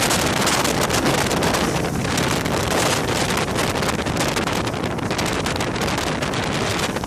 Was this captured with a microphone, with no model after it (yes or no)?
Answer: yes